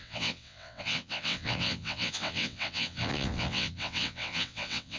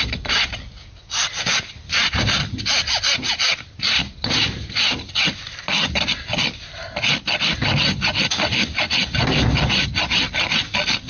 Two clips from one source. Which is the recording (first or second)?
second